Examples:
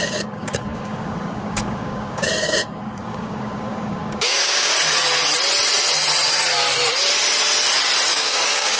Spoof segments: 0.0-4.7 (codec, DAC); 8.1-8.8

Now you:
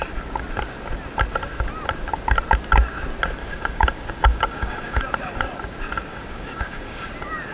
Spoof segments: 3.4-5.0 (codec, DAC); 6.1-7.1

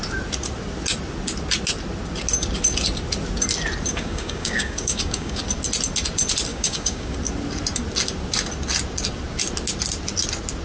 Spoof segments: 3.9-5.4 (codec, DAC); 6.5-7.1

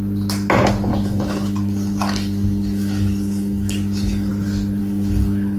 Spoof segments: 0.9-4.3 (codec, DAC); 4.8-5.6

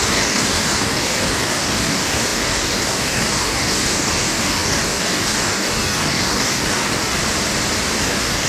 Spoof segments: 0.0-7.2 (codec, DAC); 8.0-8.5

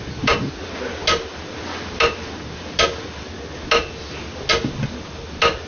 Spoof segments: none